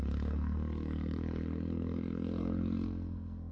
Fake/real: fake